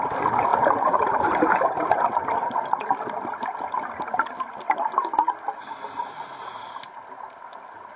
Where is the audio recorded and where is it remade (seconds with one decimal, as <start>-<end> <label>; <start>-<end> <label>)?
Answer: 0.0-0.5 recorded; 0.5-2.0 remade; 2.0-8.0 recorded

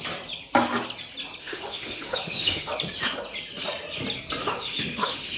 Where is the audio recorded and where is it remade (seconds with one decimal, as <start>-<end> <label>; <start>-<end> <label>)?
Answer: 0.0-1.4 recorded; 1.4-2.7 remade; 2.7-4.4 recorded; 4.4-5.4 remade

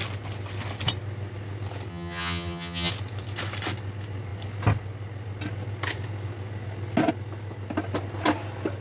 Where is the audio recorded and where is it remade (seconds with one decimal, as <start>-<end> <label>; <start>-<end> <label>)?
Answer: 0.0-1.9 recorded; 1.9-2.9 remade; 2.9-8.8 recorded

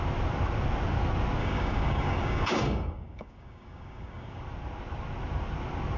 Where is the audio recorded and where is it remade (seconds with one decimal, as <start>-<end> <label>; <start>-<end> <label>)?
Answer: 0.0-1.4 recorded; 1.4-4.4 remade; 4.4-6.0 recorded

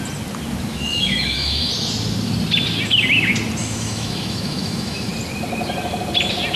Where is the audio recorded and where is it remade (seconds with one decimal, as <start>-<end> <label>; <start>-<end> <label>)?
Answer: 0.0-0.7 recorded; 0.7-1.7 remade; 1.7-3.6 recorded; 3.6-5.1 remade; 5.1-6.6 recorded

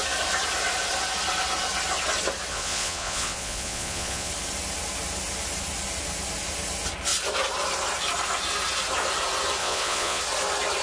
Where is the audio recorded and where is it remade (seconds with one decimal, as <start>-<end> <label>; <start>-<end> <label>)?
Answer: 0.0-2.5 recorded; 2.5-4.3 remade; 4.3-9.6 recorded; 9.6-10.2 remade; 10.2-10.8 recorded

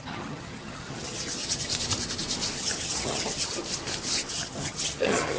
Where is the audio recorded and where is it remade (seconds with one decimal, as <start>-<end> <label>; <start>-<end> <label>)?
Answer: 0.0-1.7 remade; 1.7-2.6 recorded; 2.6-3.6 remade; 3.6-4.3 recorded; 4.3-5.4 remade